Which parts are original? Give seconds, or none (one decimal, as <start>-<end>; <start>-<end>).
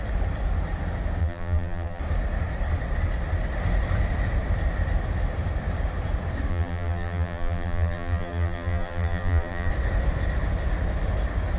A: 0.0-1.2; 2.0-6.5; 9.7-11.6